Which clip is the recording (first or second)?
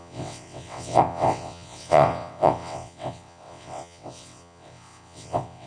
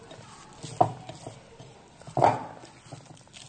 second